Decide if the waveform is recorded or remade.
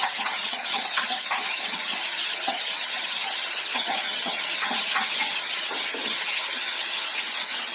remade